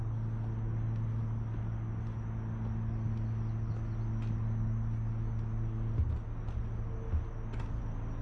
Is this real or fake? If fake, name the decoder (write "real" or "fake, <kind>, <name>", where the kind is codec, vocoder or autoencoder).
real